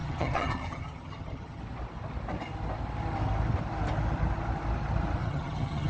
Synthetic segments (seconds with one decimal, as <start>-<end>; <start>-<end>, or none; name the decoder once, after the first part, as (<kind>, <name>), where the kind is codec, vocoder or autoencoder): 0.0-1.6 (vocoder, HiFi-GAN); 5.2-5.9